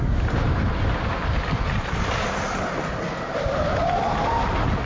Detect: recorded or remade recorded